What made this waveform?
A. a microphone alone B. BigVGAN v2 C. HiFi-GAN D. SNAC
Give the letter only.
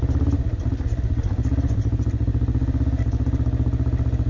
A